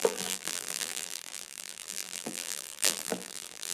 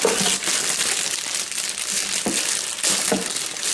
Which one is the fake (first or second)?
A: first